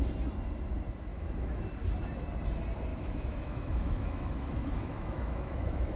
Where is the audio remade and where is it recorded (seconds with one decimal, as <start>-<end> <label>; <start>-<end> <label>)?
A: 0.0-1.1 recorded; 1.1-1.6 remade; 1.6-2.9 recorded; 2.9-6.0 remade

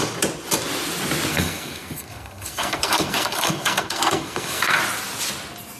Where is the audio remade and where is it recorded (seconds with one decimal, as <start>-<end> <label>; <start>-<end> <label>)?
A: 0.0-1.3 recorded; 1.3-4.8 remade; 4.8-5.8 recorded

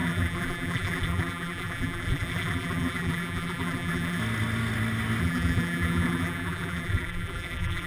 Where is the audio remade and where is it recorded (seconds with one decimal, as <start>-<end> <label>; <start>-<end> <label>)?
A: 0.0-4.2 remade; 4.2-5.2 recorded; 5.2-7.9 remade

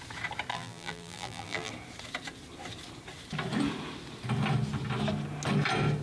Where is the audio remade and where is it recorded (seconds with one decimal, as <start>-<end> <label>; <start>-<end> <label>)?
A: 0.0-0.5 recorded; 0.5-1.7 remade; 1.7-6.0 recorded

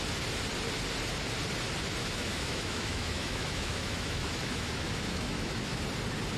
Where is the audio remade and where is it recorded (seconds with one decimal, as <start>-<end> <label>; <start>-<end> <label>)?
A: 0.0-2.0 recorded; 2.0-5.8 remade; 5.8-6.4 recorded

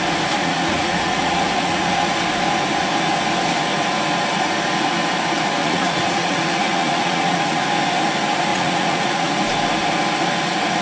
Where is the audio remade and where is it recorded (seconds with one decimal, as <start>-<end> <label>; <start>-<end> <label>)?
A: 0.0-0.4 recorded; 0.4-2.2 remade; 2.2-5.6 recorded; 5.6-7.6 remade; 7.6-8.5 recorded; 8.5-9.3 remade; 9.3-10.8 recorded